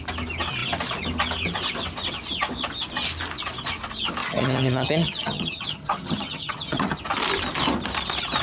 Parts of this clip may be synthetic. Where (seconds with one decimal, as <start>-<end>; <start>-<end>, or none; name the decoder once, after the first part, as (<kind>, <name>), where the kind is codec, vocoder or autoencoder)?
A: 4.2-7.0 (vocoder, HiFi-GAN)

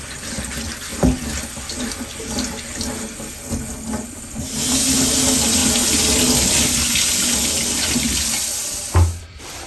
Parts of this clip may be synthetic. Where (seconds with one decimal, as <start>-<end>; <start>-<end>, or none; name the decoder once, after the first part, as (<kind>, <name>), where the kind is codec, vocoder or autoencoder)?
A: none

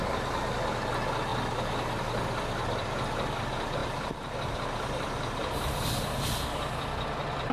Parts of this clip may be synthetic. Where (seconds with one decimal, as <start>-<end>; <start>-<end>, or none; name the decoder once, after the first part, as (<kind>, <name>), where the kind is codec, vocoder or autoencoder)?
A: 3.8-4.3 (vocoder, BigVGAN v2)